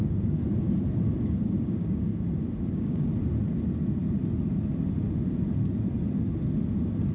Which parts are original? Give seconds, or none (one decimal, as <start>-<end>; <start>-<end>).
0.4-1.2; 2.1-2.6; 3.1-7.1

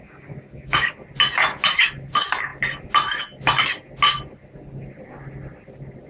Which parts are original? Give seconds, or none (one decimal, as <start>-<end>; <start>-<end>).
0.9-6.1